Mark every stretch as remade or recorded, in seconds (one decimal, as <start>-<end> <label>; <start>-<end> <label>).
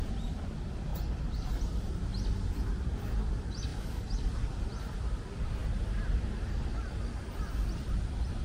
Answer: 0.0-2.1 remade; 2.1-2.8 recorded; 2.8-3.7 remade; 3.7-4.6 recorded; 4.6-5.6 remade; 5.6-7.2 recorded; 7.2-8.4 remade